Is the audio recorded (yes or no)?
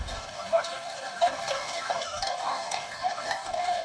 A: no